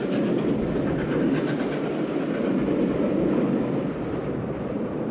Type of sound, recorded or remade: recorded